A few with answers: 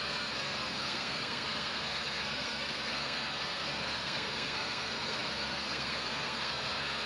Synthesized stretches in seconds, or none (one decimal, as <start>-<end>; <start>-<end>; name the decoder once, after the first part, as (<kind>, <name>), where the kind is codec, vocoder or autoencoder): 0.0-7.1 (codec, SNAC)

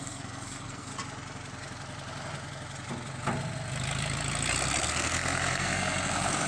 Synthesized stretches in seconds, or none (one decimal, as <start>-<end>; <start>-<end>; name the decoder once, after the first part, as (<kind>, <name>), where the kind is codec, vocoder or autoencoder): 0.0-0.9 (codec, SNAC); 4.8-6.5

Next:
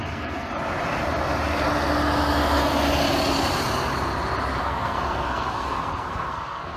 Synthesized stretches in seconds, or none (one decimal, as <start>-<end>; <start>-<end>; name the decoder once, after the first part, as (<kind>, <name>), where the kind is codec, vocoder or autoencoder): 0.0-0.5 (codec, SNAC); 4.6-6.8